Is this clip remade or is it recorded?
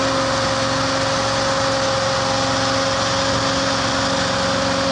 recorded